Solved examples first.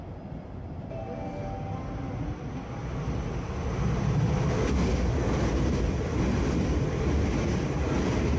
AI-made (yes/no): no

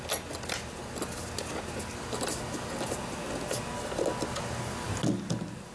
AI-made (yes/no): no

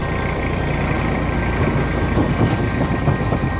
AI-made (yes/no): no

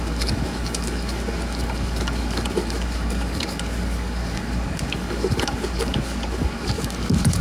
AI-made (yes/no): yes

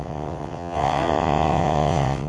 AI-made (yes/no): yes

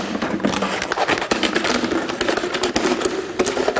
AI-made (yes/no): no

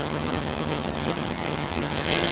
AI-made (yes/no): yes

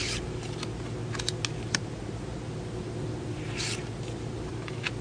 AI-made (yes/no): no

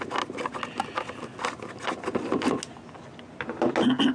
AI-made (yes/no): no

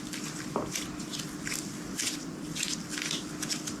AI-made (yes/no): no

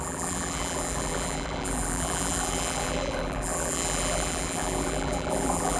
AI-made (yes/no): yes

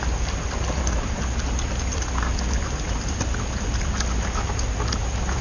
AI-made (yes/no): no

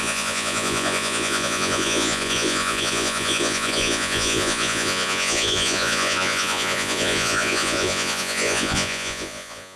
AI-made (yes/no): yes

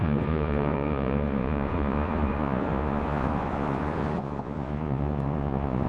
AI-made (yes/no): yes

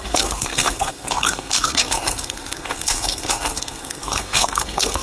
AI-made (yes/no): yes